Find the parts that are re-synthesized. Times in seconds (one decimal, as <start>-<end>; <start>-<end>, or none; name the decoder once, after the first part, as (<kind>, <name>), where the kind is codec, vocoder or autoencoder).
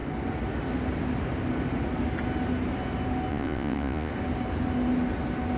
3.3-4.1 (vocoder, Vocos)